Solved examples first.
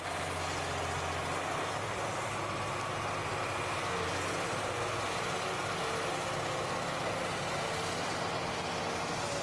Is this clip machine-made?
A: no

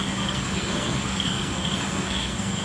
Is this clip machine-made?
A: yes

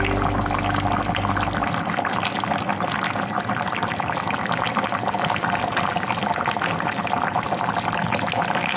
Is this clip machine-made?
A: no